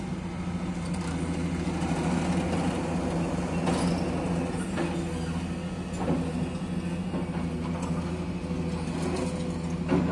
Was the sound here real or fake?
real